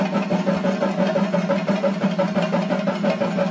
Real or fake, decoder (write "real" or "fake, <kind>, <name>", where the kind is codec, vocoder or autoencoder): real